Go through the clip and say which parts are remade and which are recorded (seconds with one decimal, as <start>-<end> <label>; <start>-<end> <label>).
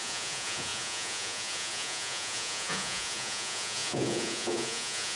0.0-5.2 remade